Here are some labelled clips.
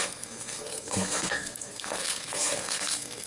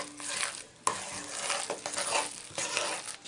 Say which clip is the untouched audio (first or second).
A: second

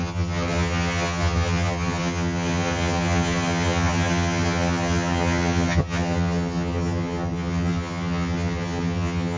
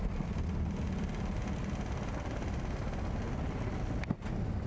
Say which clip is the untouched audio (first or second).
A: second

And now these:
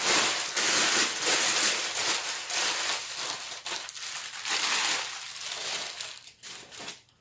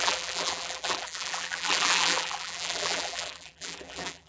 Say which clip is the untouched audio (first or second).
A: first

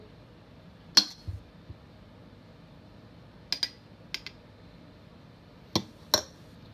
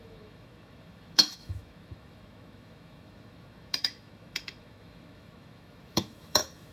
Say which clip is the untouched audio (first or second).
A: first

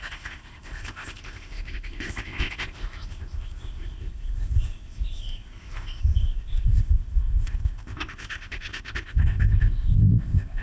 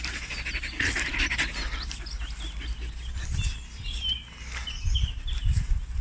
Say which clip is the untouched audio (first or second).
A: second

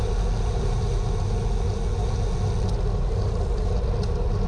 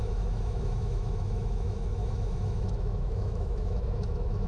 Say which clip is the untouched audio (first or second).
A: first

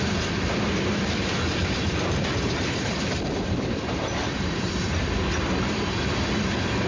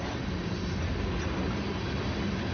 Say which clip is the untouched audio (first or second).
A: second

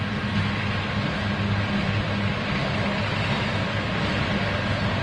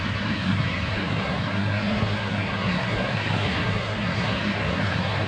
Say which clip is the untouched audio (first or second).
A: first